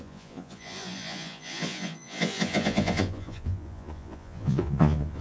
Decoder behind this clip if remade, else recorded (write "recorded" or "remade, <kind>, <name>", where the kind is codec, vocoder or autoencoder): remade, vocoder, Vocos